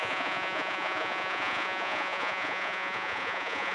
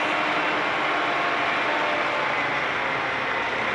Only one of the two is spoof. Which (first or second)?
first